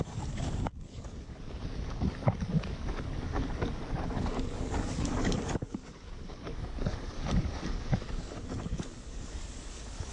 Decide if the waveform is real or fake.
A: fake